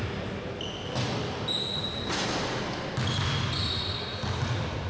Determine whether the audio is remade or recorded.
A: recorded